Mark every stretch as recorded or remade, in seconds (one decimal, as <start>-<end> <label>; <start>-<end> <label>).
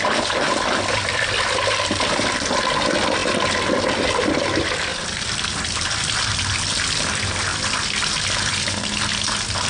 0.0-9.7 recorded